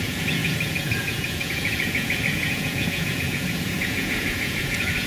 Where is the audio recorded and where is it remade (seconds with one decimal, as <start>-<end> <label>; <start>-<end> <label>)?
0.0-5.1 remade